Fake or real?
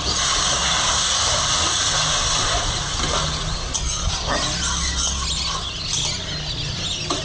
real